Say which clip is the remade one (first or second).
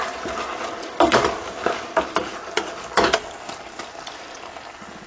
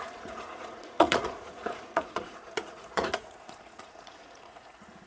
second